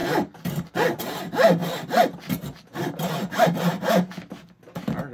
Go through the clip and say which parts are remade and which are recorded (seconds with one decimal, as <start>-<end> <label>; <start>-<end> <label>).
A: 0.0-5.1 recorded